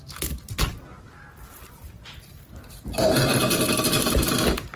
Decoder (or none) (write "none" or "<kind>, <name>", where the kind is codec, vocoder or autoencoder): none